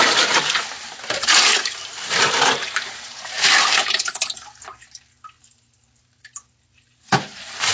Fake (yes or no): yes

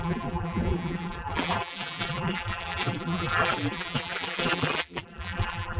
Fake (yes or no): yes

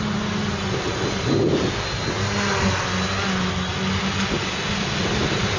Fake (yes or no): no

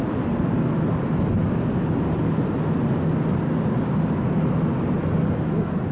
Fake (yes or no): no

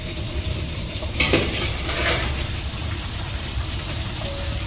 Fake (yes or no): yes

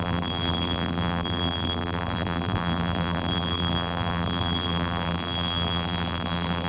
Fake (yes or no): yes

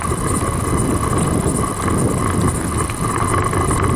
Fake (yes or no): no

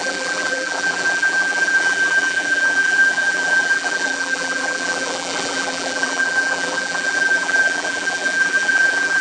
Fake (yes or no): yes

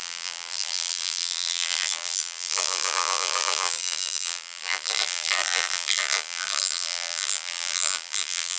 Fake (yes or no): yes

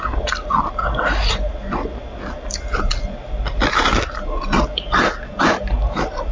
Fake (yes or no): no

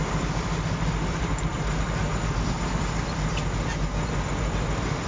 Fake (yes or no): yes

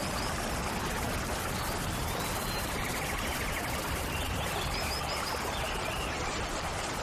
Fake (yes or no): yes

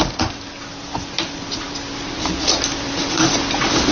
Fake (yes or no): yes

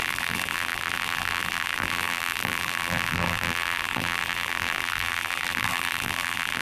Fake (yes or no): yes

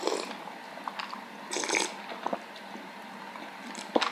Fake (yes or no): no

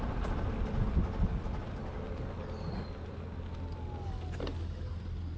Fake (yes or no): no